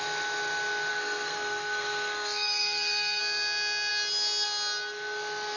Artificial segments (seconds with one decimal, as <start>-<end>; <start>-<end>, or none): 0.9-3.2